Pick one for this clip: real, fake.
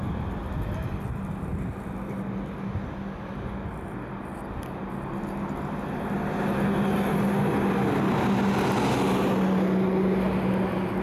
real